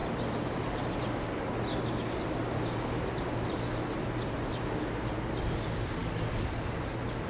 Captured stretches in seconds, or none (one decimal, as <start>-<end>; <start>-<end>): 0.0-6.0; 6.5-7.3